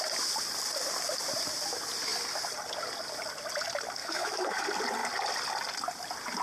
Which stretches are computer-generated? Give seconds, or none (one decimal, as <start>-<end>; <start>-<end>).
4.0-4.6